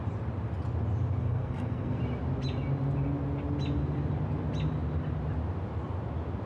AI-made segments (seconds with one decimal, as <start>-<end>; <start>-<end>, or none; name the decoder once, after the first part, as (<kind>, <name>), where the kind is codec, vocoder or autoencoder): 1.2-2.0 (codec, SNAC)